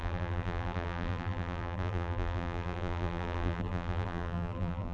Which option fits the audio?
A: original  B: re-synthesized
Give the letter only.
B